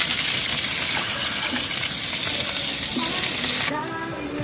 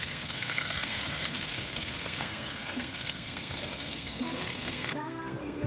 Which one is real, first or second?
first